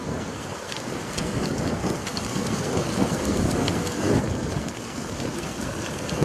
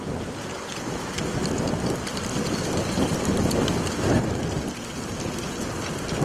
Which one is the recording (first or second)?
second